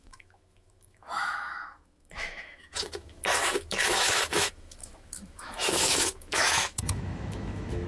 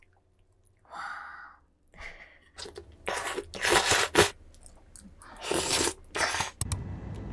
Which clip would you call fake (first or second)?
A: first